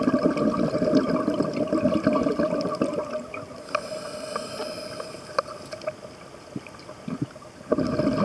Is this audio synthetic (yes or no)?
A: no